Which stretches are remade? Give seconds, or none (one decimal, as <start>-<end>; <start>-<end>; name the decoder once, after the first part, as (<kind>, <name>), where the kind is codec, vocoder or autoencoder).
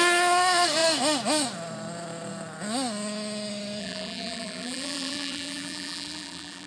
3.8-6.7 (vocoder, BigVGAN v2)